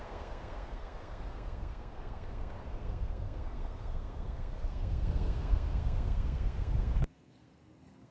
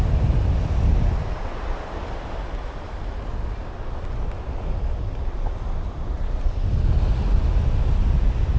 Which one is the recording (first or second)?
second